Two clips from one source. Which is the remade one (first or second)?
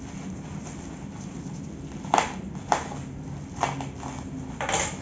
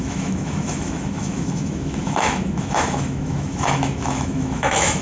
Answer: second